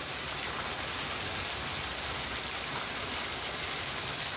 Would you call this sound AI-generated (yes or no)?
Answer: no